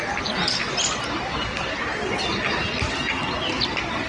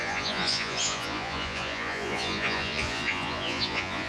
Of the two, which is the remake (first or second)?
second